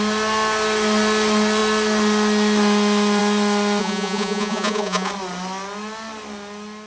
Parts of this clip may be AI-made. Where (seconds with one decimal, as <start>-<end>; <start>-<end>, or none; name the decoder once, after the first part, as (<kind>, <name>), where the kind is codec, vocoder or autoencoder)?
3.8-5.1 (vocoder, Vocos)